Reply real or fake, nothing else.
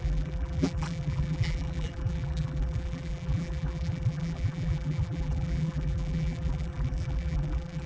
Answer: fake